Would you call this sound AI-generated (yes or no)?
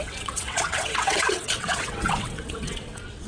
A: yes